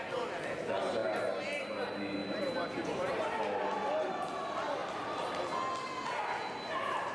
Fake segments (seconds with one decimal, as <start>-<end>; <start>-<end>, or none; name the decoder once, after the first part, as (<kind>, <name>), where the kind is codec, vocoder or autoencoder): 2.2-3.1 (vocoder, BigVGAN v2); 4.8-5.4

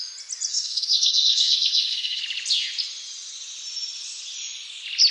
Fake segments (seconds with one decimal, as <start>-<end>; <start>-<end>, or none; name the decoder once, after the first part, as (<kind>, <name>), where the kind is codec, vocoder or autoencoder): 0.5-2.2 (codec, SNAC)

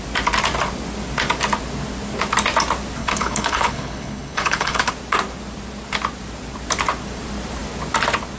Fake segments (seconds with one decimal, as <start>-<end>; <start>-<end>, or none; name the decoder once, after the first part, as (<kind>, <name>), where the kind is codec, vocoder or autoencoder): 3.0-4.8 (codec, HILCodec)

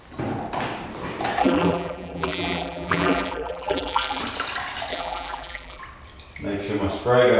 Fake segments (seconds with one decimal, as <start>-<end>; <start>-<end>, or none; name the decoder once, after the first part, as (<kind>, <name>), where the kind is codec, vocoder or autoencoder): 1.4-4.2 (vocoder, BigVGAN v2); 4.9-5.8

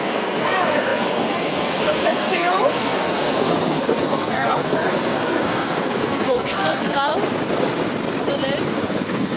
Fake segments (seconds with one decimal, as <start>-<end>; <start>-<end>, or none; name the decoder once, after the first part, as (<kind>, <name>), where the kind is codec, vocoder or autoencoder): 0.0-7.1 (codec, SNAC); 8.7-9.4